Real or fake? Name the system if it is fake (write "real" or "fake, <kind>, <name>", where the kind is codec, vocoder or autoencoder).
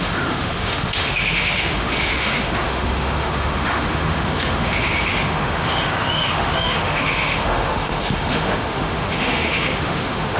fake, autoencoder, DAC-VAE